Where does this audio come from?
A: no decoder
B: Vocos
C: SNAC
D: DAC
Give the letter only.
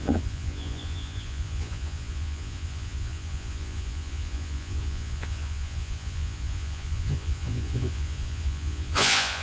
B